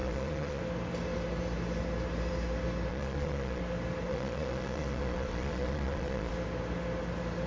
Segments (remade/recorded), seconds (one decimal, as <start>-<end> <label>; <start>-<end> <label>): 0.0-0.6 remade; 0.6-2.9 recorded; 2.9-3.6 remade; 3.6-4.1 recorded; 4.1-6.3 remade; 6.3-7.5 recorded

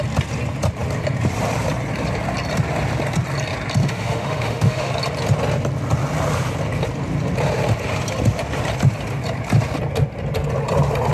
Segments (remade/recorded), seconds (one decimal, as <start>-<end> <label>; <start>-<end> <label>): 0.0-3.8 recorded; 3.8-4.9 remade; 4.9-11.1 recorded

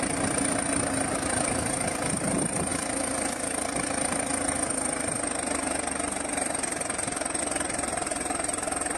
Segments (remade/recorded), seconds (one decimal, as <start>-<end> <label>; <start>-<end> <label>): 0.0-9.0 recorded

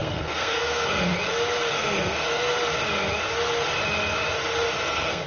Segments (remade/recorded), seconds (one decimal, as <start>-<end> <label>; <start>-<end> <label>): 0.0-1.1 remade; 1.1-1.7 recorded; 1.7-2.5 remade; 2.5-4.8 recorded; 4.8-5.3 remade

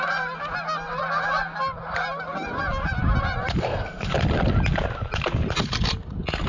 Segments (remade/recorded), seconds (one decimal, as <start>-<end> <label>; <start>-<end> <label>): 0.0-3.6 recorded; 3.6-4.1 remade; 4.1-6.5 recorded